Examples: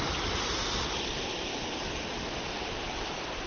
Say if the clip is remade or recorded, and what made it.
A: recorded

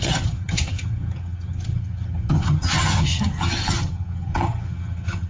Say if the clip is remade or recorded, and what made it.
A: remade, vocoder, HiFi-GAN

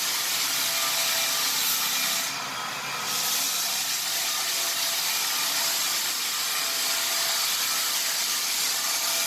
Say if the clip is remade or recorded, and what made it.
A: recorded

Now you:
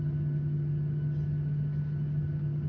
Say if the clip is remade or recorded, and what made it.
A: recorded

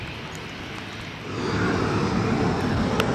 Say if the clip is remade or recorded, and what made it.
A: recorded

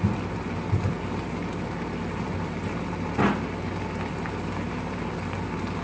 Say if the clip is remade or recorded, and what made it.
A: recorded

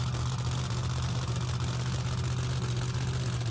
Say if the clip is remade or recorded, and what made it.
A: recorded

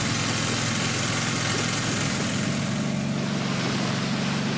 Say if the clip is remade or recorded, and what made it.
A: recorded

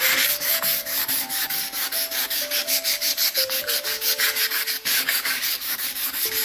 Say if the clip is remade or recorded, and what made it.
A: remade, codec, DAC